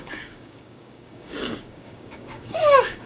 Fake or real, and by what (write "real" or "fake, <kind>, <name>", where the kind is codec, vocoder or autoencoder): fake, codec, DAC